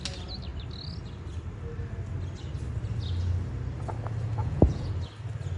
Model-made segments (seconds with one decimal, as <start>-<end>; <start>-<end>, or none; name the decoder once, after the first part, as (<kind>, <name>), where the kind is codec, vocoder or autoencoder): 4.4-4.9 (vocoder, Vocos)